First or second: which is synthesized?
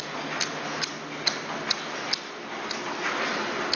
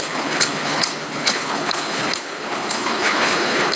second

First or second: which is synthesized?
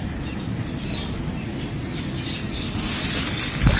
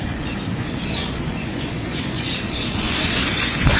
second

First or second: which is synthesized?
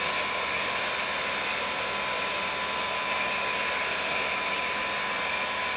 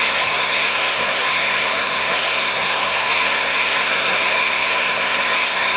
second